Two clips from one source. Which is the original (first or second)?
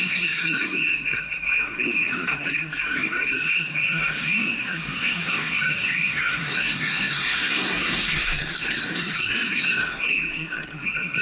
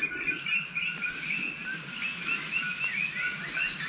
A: second